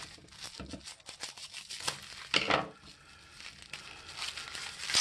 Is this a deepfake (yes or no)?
no